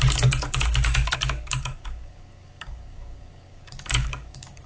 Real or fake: fake